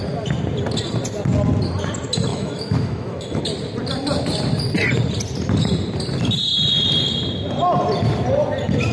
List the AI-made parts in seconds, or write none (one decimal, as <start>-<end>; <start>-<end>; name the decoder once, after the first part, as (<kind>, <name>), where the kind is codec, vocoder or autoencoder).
2.3-3.4 (autoencoder, DAC-VAE)